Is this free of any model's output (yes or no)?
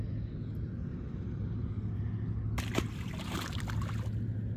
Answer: yes